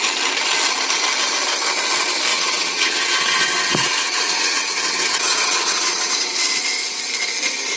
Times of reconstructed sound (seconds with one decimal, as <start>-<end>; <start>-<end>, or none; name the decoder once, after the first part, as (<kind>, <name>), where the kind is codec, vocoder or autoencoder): 2.3-6.1 (vocoder, WaveNeXt)